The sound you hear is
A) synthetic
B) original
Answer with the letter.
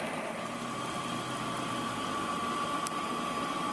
B